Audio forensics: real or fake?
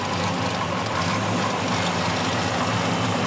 real